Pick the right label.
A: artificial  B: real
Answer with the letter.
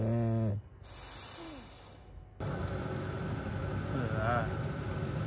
B